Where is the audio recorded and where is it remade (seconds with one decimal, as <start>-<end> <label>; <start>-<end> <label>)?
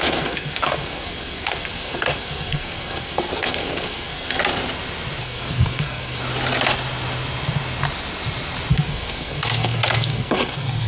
0.0-4.4 remade; 4.4-5.2 recorded; 5.2-6.2 remade; 6.2-8.7 recorded; 8.7-10.9 remade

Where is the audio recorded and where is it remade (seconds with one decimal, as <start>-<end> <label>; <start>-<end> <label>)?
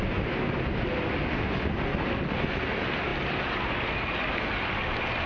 0.0-5.3 recorded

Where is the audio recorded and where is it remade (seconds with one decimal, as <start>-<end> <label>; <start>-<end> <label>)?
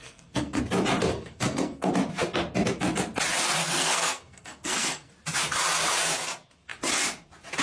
0.0-0.6 remade; 0.6-1.1 recorded; 1.1-1.9 remade; 1.9-3.6 recorded; 3.6-5.1 remade; 5.1-7.6 recorded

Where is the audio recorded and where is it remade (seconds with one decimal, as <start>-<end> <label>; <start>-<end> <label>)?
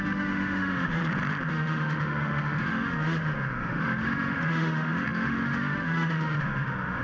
0.0-1.0 remade; 1.0-1.5 recorded; 1.5-7.0 remade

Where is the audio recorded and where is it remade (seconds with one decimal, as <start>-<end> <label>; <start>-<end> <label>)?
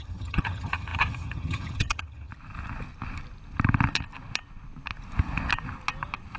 0.0-2.3 remade; 2.3-6.4 recorded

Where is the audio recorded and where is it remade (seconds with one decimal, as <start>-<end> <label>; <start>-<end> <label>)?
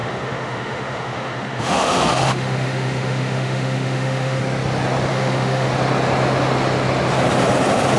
0.0-4.4 remade; 4.4-5.1 recorded; 5.1-5.7 remade; 5.7-8.0 recorded